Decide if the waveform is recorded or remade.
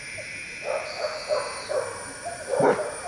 remade